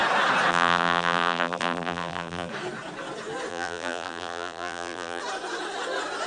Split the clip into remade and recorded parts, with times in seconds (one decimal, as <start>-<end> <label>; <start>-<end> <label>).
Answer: 0.0-0.5 recorded; 0.5-2.5 remade; 2.5-3.5 recorded; 3.5-5.2 remade; 5.2-6.3 recorded